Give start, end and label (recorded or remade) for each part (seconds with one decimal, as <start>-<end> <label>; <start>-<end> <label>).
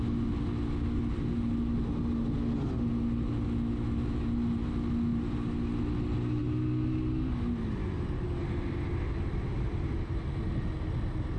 0.0-11.4 recorded